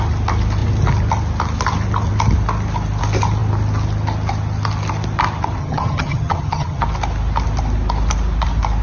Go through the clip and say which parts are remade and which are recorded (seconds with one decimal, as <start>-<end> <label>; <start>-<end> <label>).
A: 0.0-5.6 recorded; 5.6-6.8 remade; 6.8-8.8 recorded